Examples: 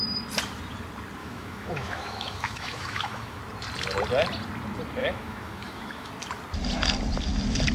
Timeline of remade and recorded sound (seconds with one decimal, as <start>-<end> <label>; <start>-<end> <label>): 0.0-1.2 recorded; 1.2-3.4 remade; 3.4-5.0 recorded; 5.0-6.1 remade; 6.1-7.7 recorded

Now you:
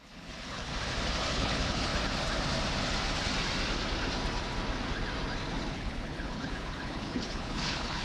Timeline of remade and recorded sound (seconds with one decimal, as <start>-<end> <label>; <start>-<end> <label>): 0.0-0.7 remade; 0.7-1.3 recorded; 1.3-1.9 remade; 1.9-5.7 recorded; 5.7-8.0 remade

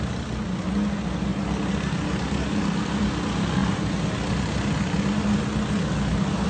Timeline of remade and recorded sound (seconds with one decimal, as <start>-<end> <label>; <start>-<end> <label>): 0.0-6.5 recorded

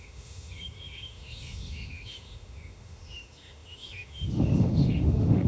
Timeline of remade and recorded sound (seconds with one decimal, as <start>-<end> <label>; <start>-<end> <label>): 0.0-5.5 remade

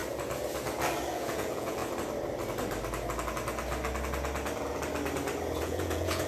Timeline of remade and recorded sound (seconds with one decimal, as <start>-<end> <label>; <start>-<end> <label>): 0.0-1.1 recorded; 1.1-1.8 remade; 1.8-5.6 recorded; 5.6-6.3 remade

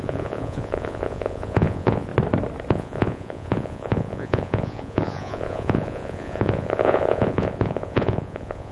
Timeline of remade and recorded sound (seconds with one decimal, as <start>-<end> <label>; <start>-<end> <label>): 0.0-2.1 remade; 2.1-2.7 recorded; 2.7-8.7 remade